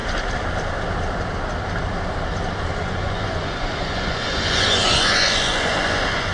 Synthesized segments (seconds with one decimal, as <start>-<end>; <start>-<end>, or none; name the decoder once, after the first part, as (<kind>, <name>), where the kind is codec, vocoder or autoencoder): 2.8-6.3 (vocoder, Vocos)